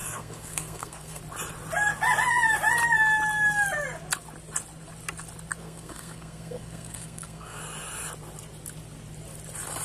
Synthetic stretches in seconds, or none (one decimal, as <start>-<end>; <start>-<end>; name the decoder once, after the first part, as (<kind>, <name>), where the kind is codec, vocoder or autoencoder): 0.0-1.2 (codec, SNAC); 5.6-7.6